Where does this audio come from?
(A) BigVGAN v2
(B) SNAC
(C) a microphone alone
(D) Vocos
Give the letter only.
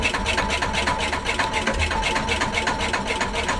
C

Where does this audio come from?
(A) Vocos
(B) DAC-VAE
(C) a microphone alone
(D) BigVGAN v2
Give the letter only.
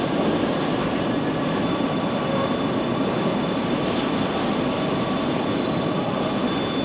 C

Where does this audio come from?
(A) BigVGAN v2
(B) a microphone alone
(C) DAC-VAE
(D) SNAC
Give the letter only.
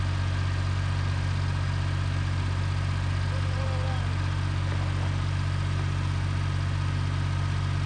B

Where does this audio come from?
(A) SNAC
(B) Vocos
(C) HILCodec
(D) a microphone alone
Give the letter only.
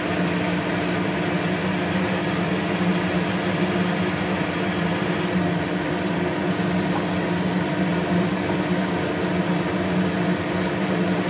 D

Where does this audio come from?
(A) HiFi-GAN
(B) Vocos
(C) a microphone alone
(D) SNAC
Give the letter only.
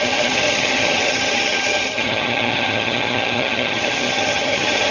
A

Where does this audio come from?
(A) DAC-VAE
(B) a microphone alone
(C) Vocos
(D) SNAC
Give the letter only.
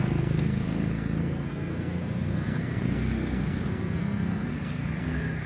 D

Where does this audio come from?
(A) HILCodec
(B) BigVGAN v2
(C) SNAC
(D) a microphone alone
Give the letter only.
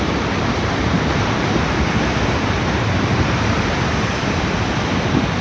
B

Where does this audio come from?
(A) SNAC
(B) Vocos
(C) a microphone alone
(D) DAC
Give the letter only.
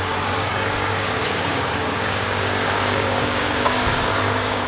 D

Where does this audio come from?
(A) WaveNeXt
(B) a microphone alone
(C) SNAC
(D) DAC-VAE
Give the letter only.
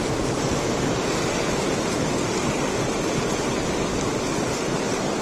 B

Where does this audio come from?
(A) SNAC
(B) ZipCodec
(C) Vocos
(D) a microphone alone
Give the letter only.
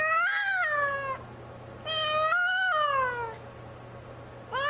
D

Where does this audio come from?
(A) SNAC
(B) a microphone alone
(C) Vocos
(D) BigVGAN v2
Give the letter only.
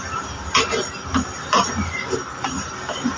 B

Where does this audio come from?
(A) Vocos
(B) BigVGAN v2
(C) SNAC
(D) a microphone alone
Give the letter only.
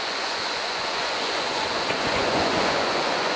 A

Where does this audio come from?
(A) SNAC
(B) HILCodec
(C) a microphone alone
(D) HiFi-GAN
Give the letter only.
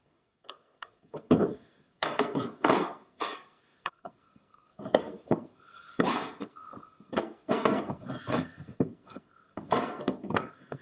A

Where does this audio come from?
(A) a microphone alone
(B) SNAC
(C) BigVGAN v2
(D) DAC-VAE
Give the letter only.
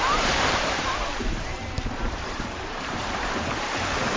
C